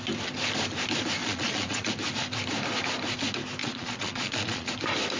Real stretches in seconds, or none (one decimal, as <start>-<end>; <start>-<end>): 0.0-1.2; 1.9-3.6; 4.7-5.2